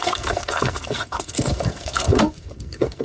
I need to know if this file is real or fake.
fake